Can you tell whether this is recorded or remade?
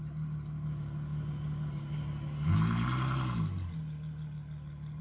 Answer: recorded